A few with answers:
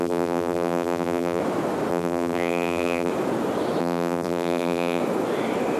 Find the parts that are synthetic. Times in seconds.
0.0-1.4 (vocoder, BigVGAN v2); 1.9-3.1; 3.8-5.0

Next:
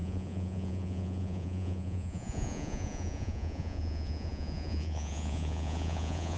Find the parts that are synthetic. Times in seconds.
0.0-6.4 (vocoder, Vocos)

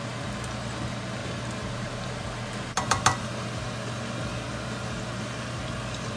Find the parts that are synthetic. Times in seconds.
1.2-2.1 (vocoder, BigVGAN v2)

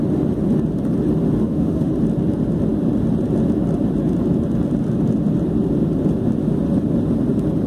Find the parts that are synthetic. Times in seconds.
1.4-1.9 (autoencoder, DAC-VAE)

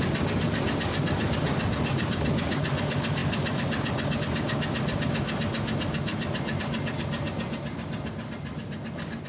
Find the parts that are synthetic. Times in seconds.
3.2-4.2 (vocoder, BigVGAN v2); 6.1-6.6

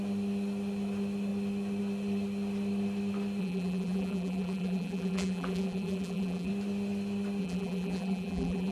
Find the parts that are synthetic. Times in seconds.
3.4-6.5 (vocoder, BigVGAN v2); 7.4-8.7

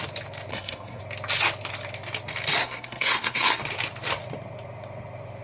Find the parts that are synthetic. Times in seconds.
0.5-1.0 (codec, SNAC); 2.6-3.6